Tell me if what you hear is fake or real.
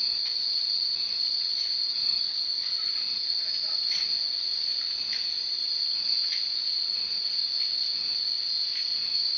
real